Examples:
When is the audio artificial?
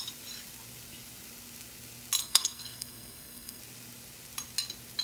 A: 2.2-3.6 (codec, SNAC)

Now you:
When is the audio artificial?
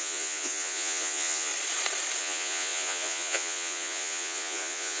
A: 0.0-1.5 (vocoder, Vocos); 2.2-5.0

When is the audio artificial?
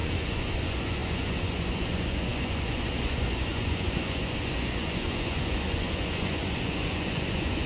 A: 0.0-7.7 (vocoder, Vocos)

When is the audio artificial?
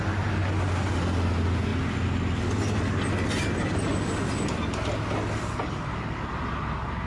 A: none